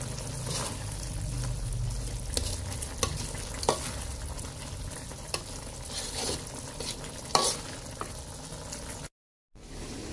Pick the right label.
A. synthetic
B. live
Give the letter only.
B